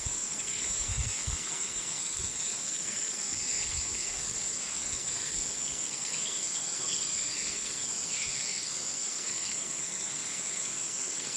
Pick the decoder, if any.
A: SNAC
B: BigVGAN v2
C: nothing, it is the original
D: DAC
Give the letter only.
A